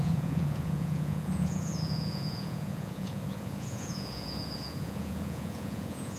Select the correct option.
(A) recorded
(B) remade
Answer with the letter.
B